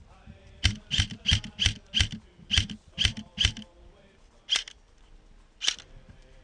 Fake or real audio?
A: real